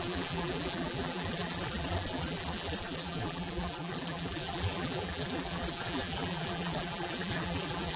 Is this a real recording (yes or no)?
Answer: no